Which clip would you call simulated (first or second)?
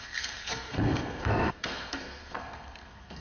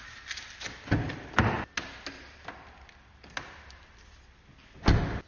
first